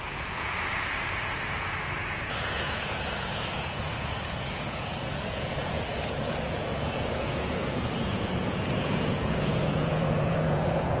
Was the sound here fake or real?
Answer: fake